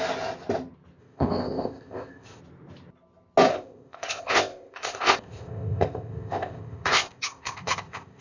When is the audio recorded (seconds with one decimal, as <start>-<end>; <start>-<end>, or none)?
0.0-1.0; 2.4-3.5